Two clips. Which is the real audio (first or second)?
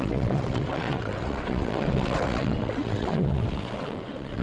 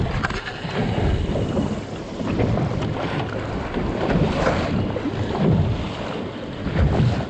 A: second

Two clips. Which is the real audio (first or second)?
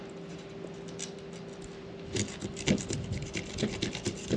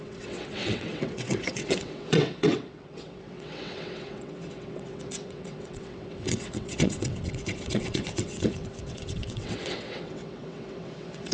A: first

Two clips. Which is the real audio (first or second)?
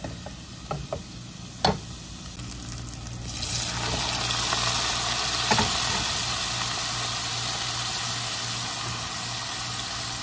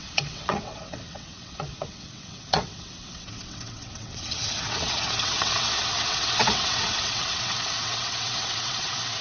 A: first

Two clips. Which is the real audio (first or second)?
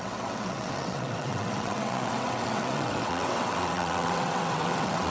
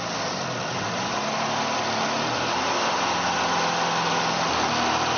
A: second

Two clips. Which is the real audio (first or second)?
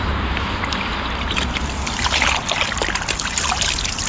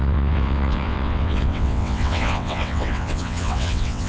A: first